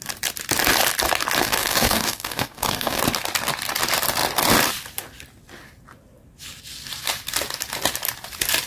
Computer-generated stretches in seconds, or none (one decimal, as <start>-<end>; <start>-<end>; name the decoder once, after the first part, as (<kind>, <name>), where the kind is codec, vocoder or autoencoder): 1.4-3.0 (codec, DAC)